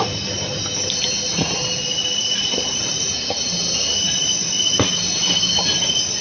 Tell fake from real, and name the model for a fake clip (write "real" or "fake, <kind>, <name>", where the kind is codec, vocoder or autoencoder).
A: real